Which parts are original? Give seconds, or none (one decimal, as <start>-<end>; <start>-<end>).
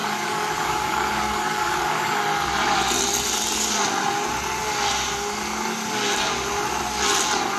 2.2-7.6